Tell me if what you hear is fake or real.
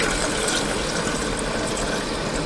real